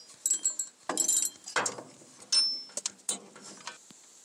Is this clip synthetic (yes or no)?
no